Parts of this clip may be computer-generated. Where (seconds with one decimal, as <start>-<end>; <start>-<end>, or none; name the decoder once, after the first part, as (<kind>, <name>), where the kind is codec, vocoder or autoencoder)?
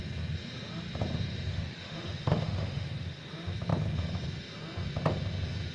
1.5-3.3 (autoencoder, DAC-VAE)